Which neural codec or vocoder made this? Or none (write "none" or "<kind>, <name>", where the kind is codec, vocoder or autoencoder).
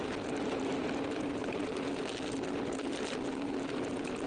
none